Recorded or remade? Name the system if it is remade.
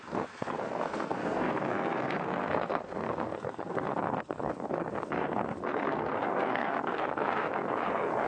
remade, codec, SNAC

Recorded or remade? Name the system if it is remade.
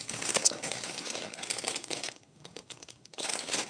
remade, codec, SNAC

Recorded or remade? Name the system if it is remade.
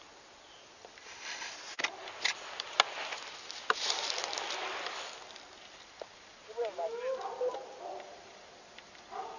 recorded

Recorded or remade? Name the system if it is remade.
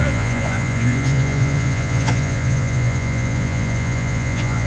remade, vocoder, Vocos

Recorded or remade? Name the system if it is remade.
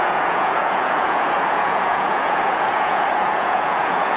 remade, vocoder, Vocos